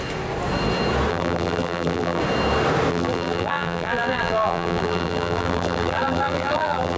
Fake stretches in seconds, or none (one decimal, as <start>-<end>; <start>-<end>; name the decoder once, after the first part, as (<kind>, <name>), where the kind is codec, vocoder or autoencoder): 1.1-2.2 (vocoder, BigVGAN v2); 2.9-7.0